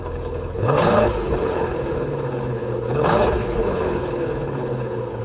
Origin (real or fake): fake